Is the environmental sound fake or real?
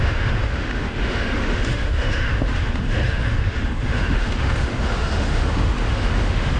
fake